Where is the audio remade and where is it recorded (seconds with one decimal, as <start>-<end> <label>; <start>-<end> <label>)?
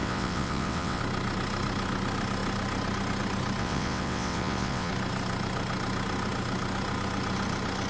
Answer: 0.0-1.0 remade; 1.0-3.6 recorded; 3.6-4.9 remade; 4.9-7.9 recorded